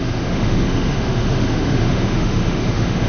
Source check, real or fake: fake